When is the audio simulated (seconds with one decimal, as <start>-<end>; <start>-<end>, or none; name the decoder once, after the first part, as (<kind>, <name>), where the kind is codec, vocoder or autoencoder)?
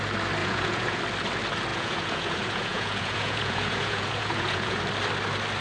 0.4-1.0 (vocoder, Vocos); 1.7-4.8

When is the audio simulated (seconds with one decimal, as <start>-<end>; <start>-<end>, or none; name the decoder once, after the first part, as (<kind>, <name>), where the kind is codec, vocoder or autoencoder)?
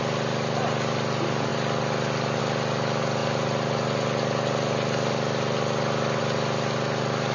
none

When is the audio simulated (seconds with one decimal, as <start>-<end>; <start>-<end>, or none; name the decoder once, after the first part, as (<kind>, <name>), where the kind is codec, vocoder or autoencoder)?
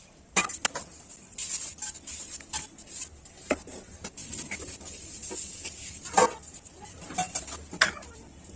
none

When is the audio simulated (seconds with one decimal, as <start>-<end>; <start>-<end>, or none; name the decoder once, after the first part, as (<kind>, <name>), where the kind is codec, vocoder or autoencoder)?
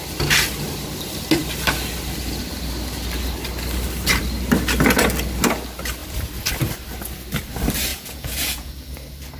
7.9-8.7 (vocoder, Vocos)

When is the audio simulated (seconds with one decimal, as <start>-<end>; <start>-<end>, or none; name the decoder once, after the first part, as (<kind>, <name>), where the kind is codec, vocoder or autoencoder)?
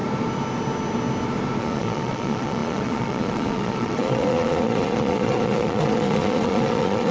1.6-7.1 (vocoder, Vocos)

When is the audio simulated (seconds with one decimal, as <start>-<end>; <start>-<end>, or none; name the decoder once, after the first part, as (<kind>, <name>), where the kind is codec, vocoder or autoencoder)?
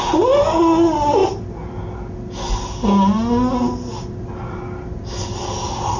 none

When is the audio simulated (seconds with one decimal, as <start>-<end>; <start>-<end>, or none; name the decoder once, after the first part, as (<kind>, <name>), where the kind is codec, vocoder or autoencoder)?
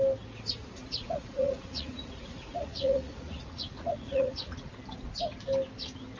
1.0-4.7 (vocoder, Vocos)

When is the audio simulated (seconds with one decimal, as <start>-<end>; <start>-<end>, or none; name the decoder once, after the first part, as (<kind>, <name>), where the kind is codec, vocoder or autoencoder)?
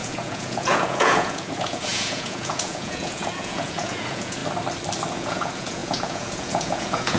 0.0-4.4 (vocoder, Vocos); 5.1-7.2